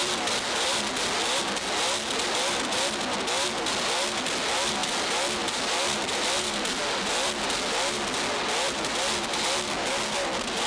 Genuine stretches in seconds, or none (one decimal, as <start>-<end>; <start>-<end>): 0.0-10.7